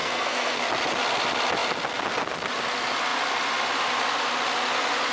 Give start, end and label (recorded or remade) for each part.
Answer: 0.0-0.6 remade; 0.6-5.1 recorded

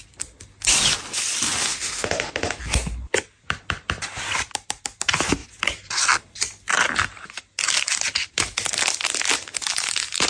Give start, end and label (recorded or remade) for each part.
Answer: 0.0-1.6 recorded; 1.6-2.6 remade; 2.6-10.3 recorded

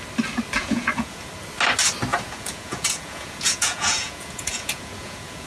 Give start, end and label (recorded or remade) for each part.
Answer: 0.0-0.6 recorded; 0.6-1.3 remade; 1.3-2.1 recorded; 2.1-5.5 remade

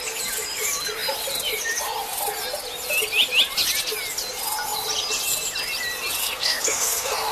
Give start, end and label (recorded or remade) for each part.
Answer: 0.0-6.2 recorded; 6.2-7.3 remade

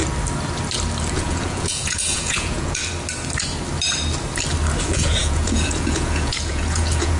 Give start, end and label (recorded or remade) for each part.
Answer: 0.0-1.1 recorded; 1.1-2.8 remade; 2.8-4.8 recorded; 4.8-7.2 remade